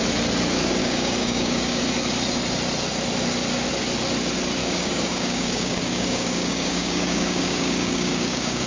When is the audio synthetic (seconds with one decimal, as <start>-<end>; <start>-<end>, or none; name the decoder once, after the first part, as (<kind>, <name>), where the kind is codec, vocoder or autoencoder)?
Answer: 0.8-1.8 (codec, DAC); 4.6-8.7